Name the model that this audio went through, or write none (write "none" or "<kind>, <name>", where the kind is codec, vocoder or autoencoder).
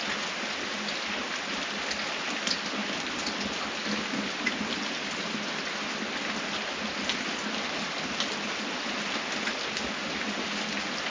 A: none